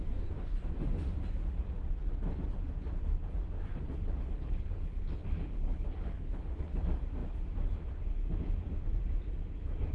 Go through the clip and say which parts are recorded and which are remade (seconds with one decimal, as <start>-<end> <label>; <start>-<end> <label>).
0.0-3.7 recorded; 3.7-6.8 remade; 6.8-9.9 recorded